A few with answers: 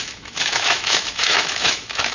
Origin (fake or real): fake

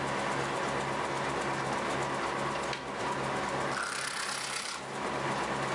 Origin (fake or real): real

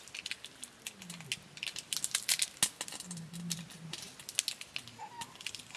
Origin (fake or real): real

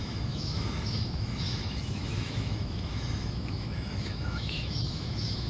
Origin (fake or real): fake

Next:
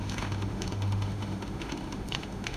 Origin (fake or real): fake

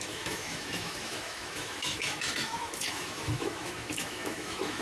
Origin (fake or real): fake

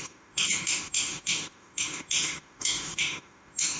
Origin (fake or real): fake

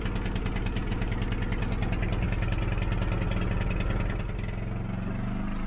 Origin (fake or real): real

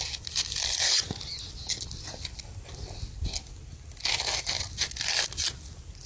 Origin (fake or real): real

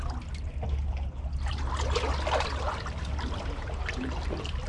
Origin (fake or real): real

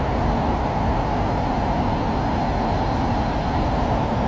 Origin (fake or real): real